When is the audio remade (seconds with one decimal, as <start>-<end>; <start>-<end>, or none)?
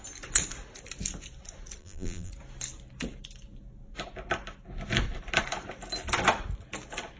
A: 1.8-2.3